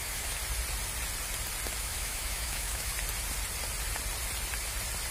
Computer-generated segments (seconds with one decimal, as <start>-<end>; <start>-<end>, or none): 0.0-0.4; 1.8-2.9